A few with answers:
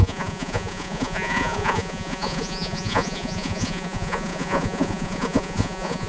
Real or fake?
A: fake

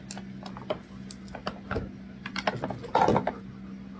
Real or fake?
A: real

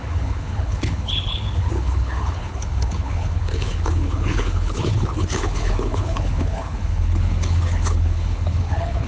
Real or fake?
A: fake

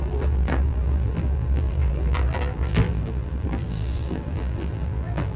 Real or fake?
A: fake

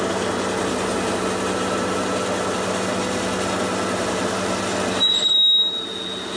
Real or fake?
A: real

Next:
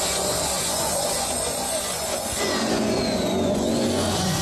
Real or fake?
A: fake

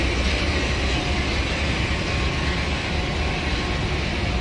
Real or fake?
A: real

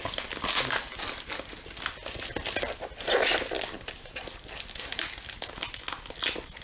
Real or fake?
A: real